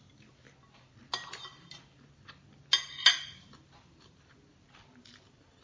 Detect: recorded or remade recorded